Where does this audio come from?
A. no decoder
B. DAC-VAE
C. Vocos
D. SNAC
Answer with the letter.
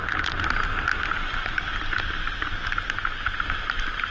A